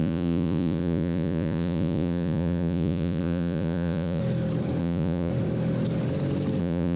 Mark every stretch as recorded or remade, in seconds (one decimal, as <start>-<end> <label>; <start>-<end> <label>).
0.0-4.2 remade; 4.2-4.8 recorded; 4.8-5.3 remade; 5.3-6.6 recorded; 6.6-7.0 remade